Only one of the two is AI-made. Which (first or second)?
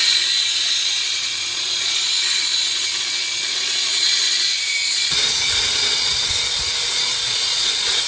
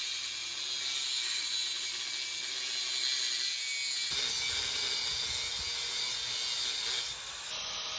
first